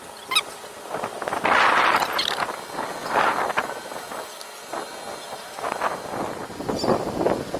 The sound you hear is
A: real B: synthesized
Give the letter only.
A